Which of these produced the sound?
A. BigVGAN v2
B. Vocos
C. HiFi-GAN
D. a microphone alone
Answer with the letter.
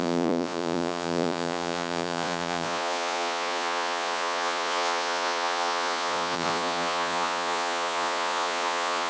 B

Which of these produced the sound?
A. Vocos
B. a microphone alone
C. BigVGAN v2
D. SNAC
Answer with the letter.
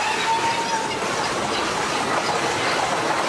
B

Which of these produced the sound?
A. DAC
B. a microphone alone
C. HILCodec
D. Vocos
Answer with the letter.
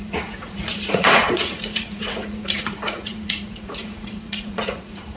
D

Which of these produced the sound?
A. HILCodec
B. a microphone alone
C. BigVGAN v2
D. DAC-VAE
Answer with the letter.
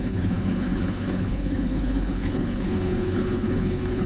A